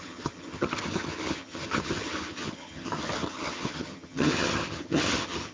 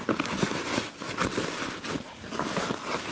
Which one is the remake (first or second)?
first